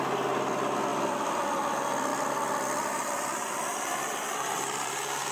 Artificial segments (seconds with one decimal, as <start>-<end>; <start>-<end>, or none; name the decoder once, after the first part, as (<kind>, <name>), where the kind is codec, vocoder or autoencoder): 0.9-1.4 (vocoder, BigVGAN v2); 2.1-5.3